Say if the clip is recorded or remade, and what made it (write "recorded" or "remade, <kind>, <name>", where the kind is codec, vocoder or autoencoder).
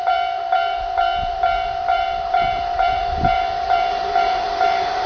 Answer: remade, vocoder, BigVGAN v2